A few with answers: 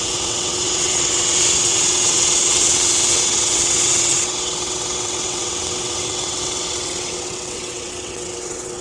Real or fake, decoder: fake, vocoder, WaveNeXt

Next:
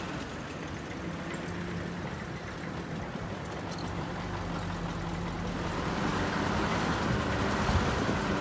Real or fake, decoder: real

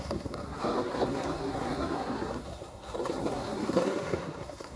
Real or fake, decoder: fake, codec, SNAC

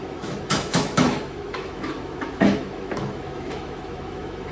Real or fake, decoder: fake, autoencoder, DAC-VAE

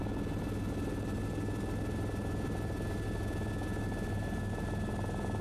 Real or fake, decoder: real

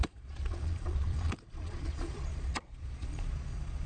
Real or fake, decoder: fake, vocoder, Vocos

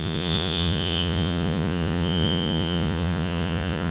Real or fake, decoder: fake, vocoder, Vocos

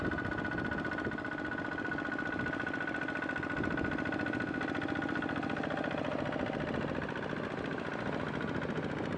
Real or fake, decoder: real